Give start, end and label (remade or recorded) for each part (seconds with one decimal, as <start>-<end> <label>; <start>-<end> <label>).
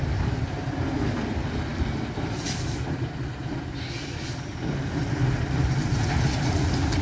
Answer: 0.0-1.7 recorded; 1.7-3.2 remade; 3.2-7.0 recorded